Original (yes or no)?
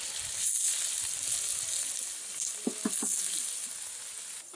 yes